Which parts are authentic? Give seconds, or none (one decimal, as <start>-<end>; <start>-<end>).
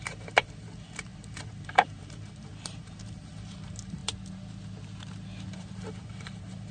4.0-5.5